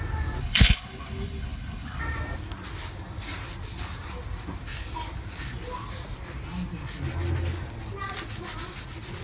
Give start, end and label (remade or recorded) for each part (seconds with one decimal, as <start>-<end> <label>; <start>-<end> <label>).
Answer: 0.0-0.4 recorded; 0.4-2.0 remade; 2.0-9.2 recorded